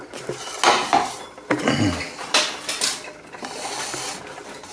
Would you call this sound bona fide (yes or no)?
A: yes